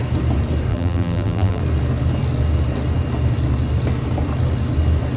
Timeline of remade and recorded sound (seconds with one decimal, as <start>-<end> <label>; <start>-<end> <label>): 0.0-0.7 recorded; 0.7-1.6 remade; 1.6-5.2 recorded